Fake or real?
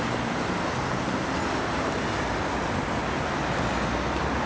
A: real